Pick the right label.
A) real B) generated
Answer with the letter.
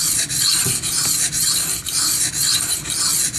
A